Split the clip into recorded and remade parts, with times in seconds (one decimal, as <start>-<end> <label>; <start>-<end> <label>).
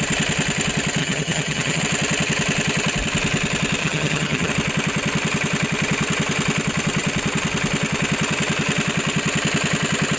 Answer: 0.0-1.0 recorded; 1.0-1.8 remade; 1.8-3.8 recorded; 3.8-4.5 remade; 4.5-10.2 recorded